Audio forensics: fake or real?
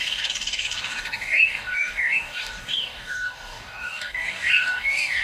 fake